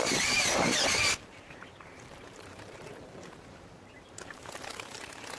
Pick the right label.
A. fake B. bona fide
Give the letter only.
A